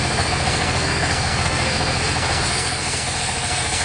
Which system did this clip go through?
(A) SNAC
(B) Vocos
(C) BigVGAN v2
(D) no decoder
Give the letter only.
A